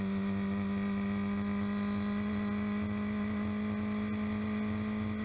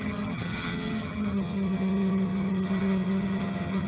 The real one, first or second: first